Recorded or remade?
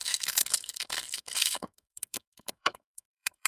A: remade